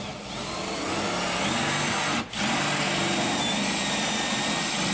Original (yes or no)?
yes